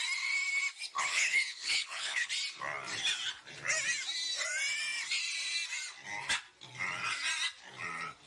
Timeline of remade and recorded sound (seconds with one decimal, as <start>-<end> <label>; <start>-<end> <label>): 0.0-0.9 recorded; 0.9-2.3 remade; 2.3-8.3 recorded